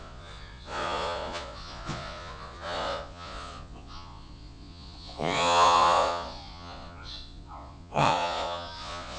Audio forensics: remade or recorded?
remade